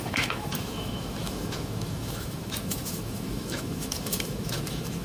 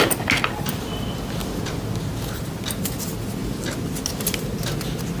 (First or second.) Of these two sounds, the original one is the second